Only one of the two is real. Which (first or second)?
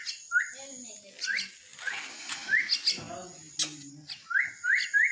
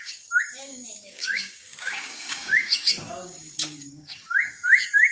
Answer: first